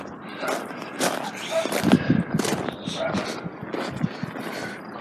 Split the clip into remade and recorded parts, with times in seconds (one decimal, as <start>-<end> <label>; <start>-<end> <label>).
0.0-5.0 recorded